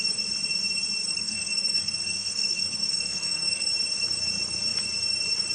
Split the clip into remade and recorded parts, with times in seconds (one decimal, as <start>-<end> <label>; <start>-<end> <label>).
0.0-1.1 recorded; 1.1-3.7 remade; 3.7-5.5 recorded